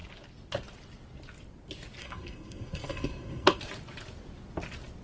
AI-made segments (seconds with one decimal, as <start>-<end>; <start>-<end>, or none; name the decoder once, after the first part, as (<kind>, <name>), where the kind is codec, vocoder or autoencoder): 2.0-3.6 (codec, SNAC)